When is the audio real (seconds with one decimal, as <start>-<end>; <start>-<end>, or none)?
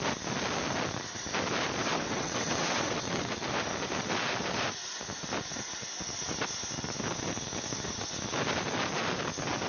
0.0-1.8; 3.4-9.7